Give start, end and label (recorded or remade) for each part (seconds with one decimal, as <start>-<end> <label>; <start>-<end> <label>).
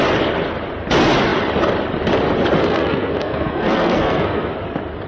0.0-2.6 recorded; 2.6-4.5 remade; 4.5-5.1 recorded